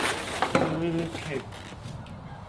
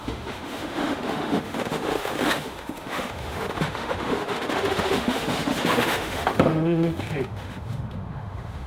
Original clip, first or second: first